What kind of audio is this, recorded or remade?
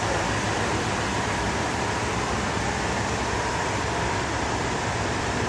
remade